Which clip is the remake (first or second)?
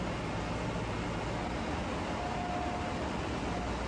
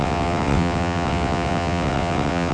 second